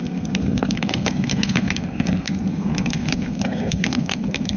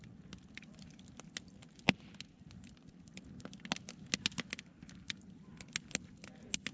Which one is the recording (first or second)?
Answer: second